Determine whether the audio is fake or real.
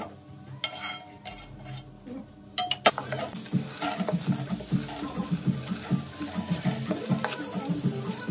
real